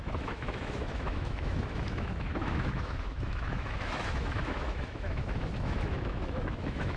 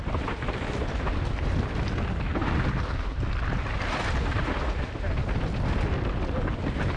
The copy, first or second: first